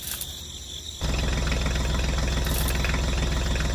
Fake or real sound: real